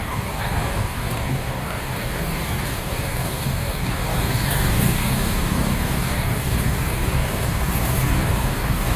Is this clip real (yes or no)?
no